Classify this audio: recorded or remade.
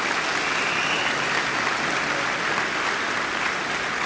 recorded